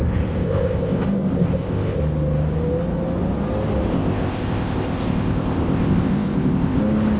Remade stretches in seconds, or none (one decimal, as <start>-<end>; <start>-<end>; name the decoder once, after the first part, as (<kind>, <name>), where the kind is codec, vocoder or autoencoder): 0.0-2.0 (codec, ZipCodec); 3.9-6.8